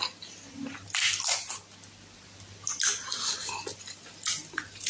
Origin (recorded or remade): recorded